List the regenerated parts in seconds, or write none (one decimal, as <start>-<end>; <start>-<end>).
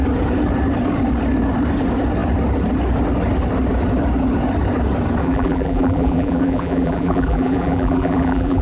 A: 5.2-8.6